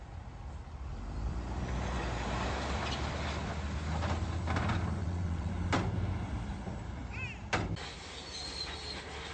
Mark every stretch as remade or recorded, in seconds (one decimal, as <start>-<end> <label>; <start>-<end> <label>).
0.0-5.0 recorded; 5.0-5.5 remade; 5.5-9.3 recorded